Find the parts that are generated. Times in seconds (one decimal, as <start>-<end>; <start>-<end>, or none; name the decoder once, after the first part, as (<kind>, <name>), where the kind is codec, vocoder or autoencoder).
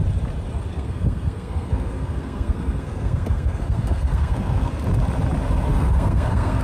0.7-4.7 (codec, SNAC); 5.7-6.6